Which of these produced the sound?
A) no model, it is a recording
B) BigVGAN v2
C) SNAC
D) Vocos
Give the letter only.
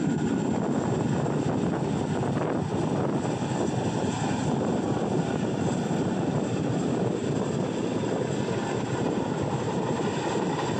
A